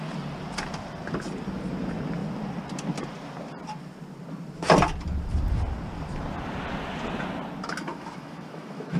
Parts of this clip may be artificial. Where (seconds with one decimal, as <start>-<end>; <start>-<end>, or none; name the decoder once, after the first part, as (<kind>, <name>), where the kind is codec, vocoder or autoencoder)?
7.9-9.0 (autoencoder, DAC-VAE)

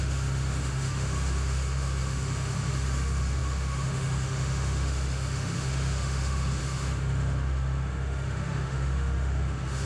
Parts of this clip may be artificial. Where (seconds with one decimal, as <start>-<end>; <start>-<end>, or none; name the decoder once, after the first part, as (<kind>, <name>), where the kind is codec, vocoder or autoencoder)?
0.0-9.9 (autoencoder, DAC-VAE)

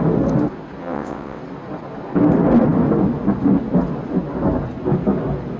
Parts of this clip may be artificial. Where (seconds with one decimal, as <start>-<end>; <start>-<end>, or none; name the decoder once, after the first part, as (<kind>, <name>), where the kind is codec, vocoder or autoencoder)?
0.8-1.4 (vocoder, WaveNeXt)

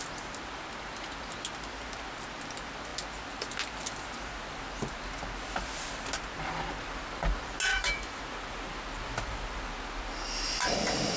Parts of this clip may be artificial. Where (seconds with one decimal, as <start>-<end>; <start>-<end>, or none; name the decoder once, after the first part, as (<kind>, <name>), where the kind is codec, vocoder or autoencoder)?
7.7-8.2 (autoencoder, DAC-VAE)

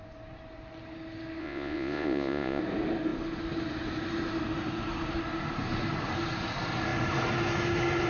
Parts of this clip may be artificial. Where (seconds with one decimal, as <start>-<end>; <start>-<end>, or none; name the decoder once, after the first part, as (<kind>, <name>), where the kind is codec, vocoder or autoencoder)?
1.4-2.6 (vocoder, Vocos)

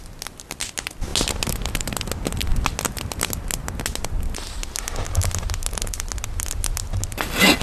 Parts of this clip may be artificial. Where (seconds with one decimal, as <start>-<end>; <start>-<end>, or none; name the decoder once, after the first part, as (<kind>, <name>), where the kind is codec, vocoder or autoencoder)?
none

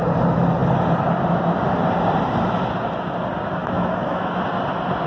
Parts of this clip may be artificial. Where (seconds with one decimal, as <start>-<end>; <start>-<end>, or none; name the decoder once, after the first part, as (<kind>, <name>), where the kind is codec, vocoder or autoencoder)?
3.6-4.4 (autoencoder, DAC-VAE)